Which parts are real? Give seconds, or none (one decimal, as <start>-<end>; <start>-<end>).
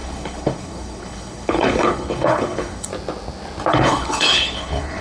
2.9-3.7